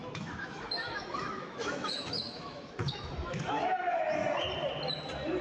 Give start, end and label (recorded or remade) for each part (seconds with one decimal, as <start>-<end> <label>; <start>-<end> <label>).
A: 0.0-4.2 remade; 4.2-5.4 recorded